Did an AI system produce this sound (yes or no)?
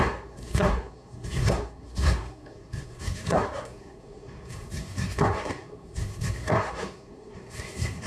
yes